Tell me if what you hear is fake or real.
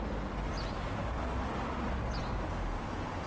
real